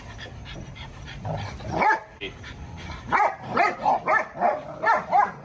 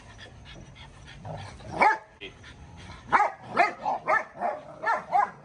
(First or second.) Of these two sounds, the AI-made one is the first